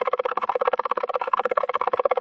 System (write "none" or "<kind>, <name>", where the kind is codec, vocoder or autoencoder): codec, SNAC